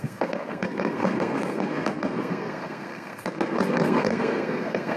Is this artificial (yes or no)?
yes